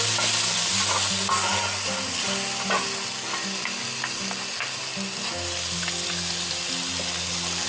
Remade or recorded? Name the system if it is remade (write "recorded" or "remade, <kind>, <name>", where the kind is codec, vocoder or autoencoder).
recorded